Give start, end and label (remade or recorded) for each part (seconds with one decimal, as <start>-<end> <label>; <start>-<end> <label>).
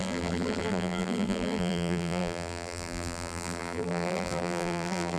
0.0-5.2 remade